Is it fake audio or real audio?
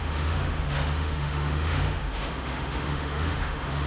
fake